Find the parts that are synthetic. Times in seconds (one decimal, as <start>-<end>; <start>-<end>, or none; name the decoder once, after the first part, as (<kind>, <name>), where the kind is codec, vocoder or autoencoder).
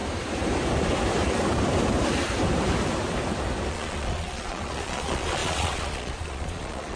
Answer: 3.7-7.0 (vocoder, Vocos)